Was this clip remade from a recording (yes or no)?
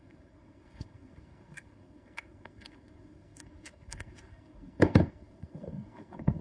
yes